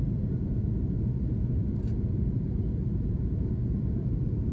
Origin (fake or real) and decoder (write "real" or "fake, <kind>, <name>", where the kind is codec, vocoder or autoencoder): fake, vocoder, BigVGAN v2